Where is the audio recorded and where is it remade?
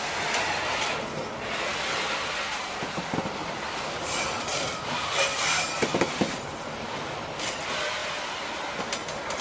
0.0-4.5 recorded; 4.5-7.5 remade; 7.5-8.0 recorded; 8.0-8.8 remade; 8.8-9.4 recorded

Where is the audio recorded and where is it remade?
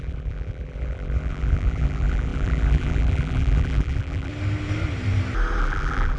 0.0-4.3 remade; 4.3-5.6 recorded; 5.6-6.2 remade